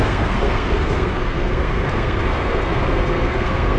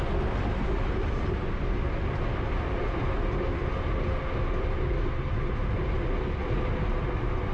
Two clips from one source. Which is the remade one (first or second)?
first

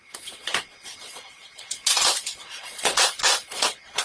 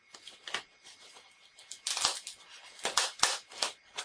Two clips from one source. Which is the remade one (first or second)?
first